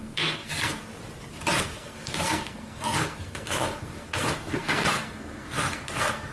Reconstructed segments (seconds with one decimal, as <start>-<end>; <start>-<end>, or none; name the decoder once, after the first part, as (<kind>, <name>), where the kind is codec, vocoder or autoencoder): 0.0-0.9 (codec, SNAC); 1.6-6.3